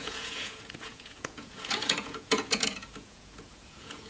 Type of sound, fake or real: fake